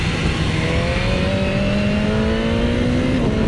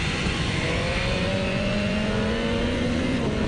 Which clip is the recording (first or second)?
first